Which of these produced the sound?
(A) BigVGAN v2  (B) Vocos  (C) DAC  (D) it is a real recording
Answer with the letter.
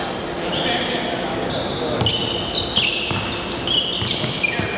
D